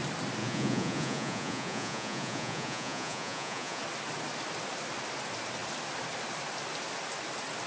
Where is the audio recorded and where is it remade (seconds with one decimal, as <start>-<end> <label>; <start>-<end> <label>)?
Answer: 0.0-0.4 recorded; 0.4-3.8 remade; 3.8-7.7 recorded